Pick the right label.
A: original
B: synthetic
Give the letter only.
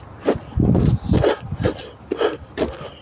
A